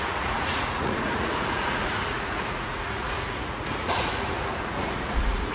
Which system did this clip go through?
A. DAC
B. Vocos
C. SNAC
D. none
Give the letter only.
B